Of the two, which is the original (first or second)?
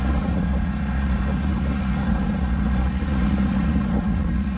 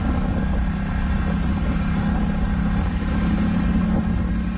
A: second